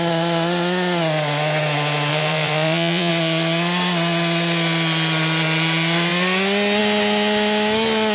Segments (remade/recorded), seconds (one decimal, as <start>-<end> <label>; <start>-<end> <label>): 0.0-2.1 recorded; 2.1-3.1 remade; 3.1-8.1 recorded